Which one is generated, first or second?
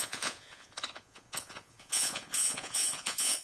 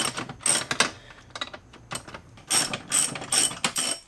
first